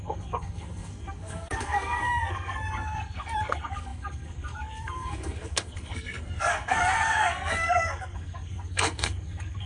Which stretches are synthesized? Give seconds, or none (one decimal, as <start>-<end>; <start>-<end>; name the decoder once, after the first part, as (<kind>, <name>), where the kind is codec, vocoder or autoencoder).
0.0-9.7 (codec, SNAC)